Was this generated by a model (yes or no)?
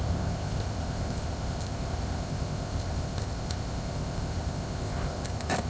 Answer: yes